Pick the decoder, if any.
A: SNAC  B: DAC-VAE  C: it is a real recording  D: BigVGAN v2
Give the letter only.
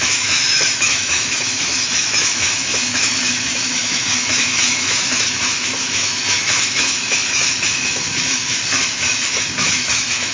B